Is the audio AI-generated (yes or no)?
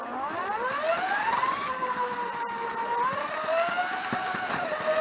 no